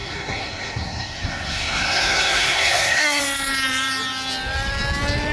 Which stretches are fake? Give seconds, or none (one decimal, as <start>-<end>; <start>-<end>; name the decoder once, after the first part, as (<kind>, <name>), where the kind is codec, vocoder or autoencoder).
0.0-3.2 (codec, SNAC)